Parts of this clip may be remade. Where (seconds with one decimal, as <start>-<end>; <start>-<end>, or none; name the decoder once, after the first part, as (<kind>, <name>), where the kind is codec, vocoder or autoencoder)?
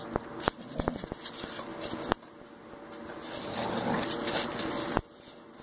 none